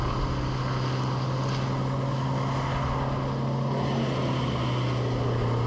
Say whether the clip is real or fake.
real